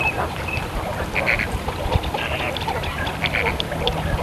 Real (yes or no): no